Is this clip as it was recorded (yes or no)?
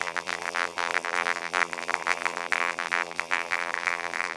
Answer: no